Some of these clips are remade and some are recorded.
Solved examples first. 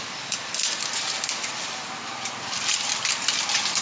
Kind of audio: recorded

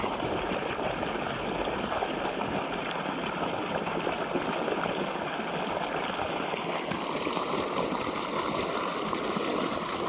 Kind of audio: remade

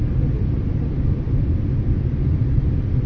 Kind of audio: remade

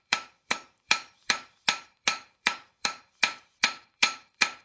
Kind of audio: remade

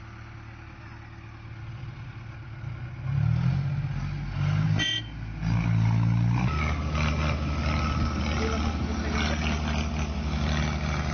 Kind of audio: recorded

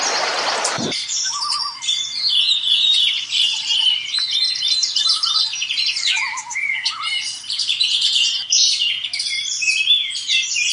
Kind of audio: remade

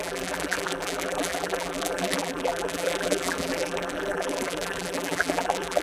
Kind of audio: remade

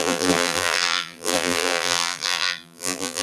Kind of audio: remade